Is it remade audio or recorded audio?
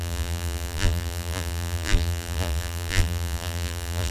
remade